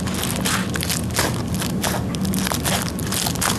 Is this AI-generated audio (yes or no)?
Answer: no